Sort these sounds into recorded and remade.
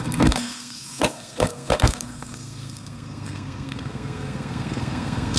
remade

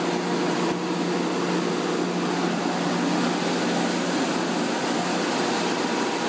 recorded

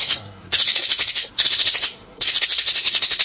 remade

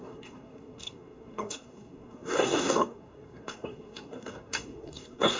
remade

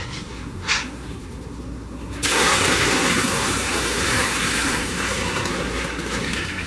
remade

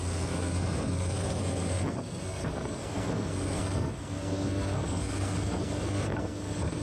remade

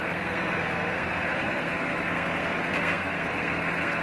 remade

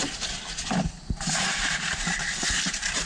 recorded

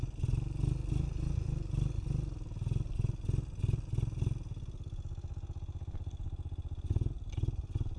recorded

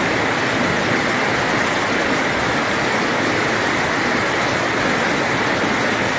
recorded